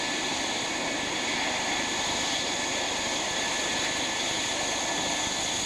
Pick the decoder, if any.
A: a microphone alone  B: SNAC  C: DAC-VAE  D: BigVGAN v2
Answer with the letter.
A